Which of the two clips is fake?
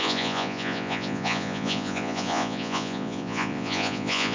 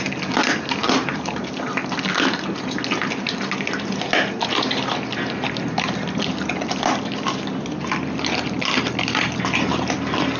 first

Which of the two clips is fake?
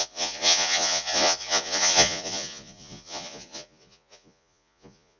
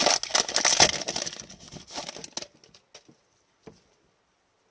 first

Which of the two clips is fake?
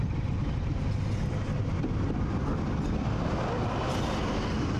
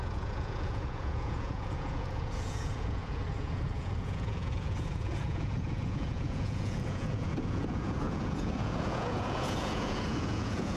second